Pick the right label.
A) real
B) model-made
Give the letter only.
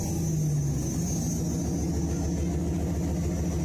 A